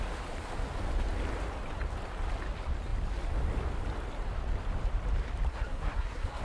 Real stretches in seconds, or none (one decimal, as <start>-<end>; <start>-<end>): 0.0-5.5